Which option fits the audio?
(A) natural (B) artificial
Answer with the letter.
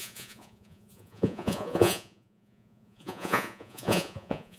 B